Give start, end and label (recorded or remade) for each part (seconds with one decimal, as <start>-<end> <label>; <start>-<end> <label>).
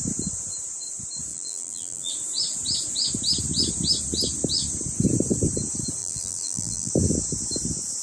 0.0-1.3 recorded; 1.3-2.1 remade; 2.1-6.0 recorded; 6.0-6.9 remade; 6.9-8.0 recorded